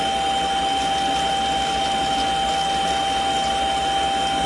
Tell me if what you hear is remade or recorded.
recorded